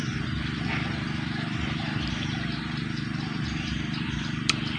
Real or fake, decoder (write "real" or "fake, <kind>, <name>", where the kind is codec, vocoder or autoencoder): fake, vocoder, BigVGAN v2